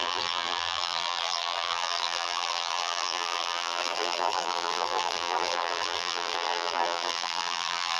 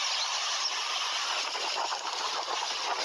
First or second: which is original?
second